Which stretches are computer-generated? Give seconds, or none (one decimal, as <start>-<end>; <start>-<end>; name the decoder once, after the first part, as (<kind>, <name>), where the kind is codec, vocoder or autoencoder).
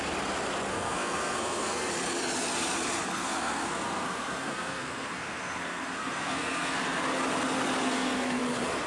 0.7-1.9 (codec, SNAC); 3.1-6.8; 7.8-8.4